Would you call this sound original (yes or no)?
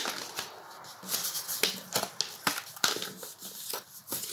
yes